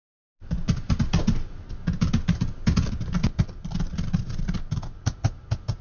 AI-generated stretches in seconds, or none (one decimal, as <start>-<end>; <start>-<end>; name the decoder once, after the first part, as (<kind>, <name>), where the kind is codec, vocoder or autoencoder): none